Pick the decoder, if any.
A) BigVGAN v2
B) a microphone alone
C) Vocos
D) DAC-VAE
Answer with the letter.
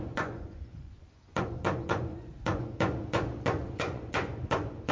C